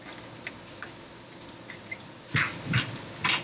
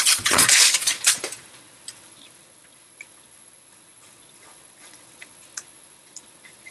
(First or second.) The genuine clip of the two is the first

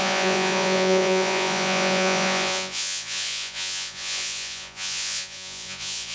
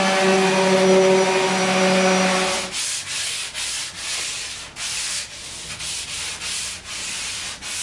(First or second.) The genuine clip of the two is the second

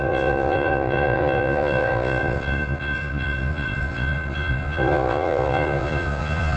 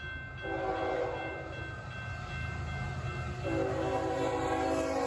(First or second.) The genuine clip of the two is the second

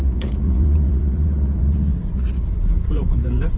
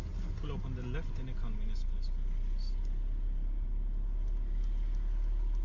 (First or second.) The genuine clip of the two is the second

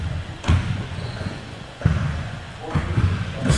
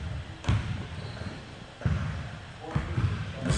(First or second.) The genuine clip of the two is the second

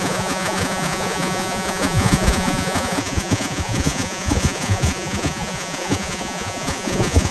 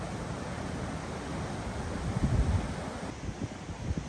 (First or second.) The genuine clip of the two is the second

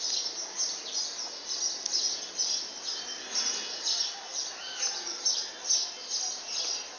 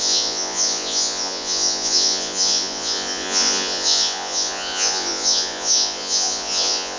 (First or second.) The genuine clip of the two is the first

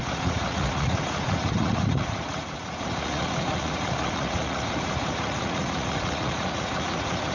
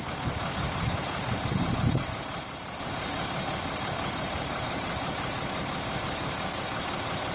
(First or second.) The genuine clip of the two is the second